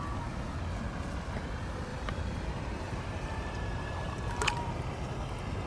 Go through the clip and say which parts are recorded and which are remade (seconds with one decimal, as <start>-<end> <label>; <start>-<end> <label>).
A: 0.0-1.9 recorded; 1.9-4.7 remade; 4.7-5.7 recorded